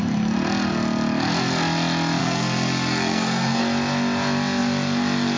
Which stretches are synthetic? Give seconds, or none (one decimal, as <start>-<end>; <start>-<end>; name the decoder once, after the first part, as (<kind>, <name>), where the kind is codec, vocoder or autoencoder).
2.2-3.6 (codec, SNAC)